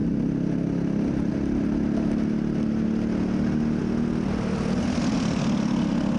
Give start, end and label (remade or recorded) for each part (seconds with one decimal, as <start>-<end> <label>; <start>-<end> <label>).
0.0-6.2 recorded